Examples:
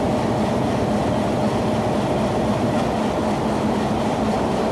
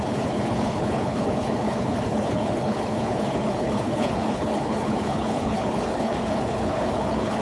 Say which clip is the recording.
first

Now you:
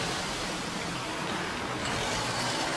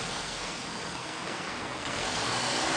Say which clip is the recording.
first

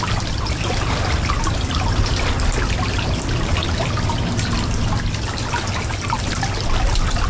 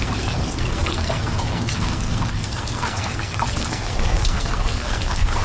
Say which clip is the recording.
first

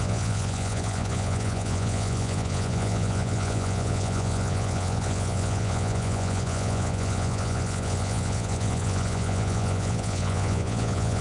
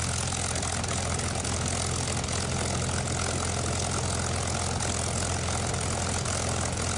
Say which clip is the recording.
second